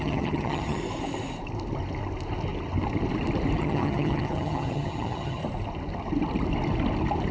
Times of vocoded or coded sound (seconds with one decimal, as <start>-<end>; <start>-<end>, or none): 0.0-0.8; 3.6-5.4